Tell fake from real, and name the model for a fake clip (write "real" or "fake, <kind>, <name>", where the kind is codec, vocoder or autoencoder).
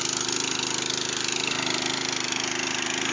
real